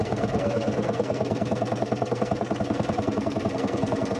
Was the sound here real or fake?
fake